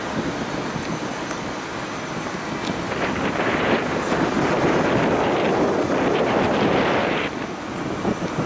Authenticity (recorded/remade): recorded